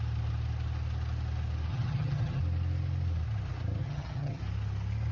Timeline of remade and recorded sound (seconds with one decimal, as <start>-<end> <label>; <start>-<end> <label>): 0.0-1.7 recorded; 1.7-2.4 remade; 2.4-3.8 recorded; 3.8-4.4 remade; 4.4-5.1 recorded